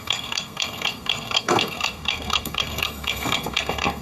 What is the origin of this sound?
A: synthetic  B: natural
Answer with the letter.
A